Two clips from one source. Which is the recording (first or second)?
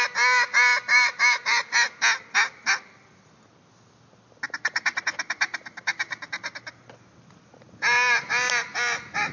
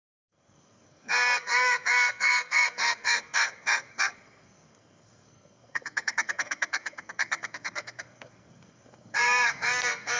first